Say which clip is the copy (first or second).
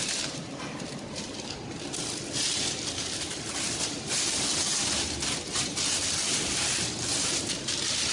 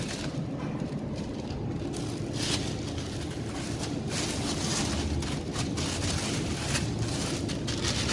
first